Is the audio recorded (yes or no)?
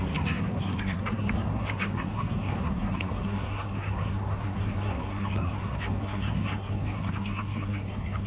no